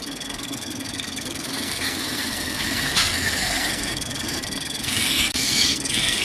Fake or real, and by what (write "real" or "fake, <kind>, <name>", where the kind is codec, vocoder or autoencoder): fake, codec, SNAC